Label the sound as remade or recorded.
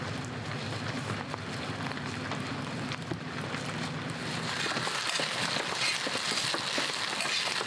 recorded